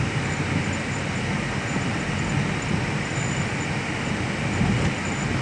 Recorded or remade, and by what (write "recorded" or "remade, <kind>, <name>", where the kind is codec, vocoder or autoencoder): recorded